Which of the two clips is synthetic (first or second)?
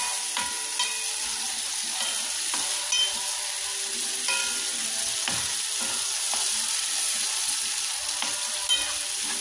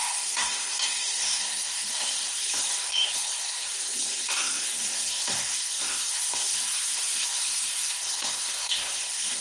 second